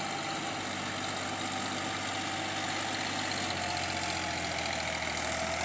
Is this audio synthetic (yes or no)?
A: no